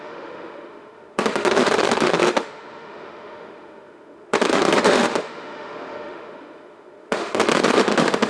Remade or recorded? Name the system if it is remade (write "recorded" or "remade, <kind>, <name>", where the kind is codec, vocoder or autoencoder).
remade, autoencoder, DAC-VAE